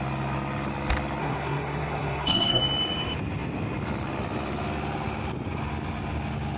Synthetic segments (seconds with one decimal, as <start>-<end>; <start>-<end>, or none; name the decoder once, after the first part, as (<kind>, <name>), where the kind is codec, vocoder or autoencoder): 1.2-2.6 (codec, SNAC)